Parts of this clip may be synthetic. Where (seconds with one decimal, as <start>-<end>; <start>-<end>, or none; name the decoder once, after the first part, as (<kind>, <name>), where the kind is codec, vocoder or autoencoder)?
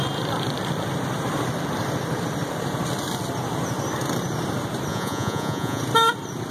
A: 4.9-5.8 (vocoder, Vocos)